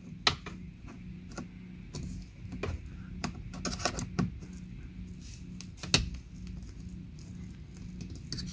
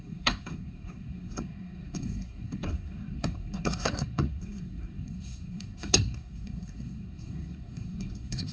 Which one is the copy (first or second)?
second